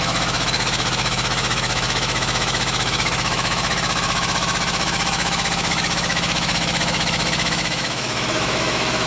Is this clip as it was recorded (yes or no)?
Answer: no